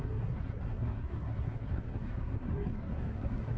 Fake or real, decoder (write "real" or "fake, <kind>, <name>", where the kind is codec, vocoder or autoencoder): fake, codec, SNAC